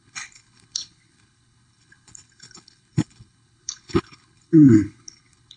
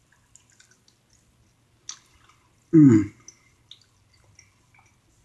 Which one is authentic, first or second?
second